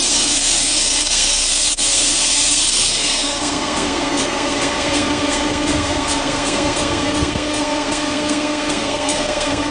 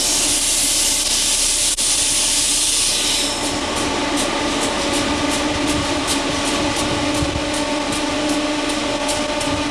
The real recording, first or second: second